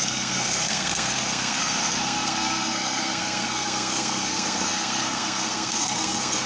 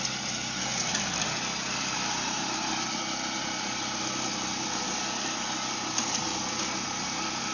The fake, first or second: first